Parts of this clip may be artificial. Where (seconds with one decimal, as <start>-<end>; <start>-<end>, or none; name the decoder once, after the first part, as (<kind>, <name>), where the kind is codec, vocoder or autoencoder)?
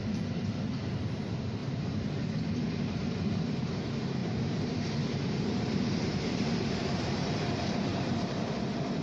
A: 0.0-9.0 (vocoder, BigVGAN v2)